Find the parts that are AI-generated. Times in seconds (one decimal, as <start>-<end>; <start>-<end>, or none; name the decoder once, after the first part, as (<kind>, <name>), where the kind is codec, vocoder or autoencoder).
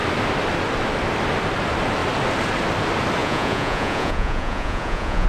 3.2-5.3 (vocoder, Vocos)